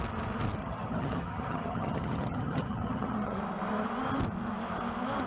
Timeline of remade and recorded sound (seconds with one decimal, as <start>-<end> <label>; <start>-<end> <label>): 0.0-0.6 recorded; 0.6-3.4 remade; 3.4-5.3 recorded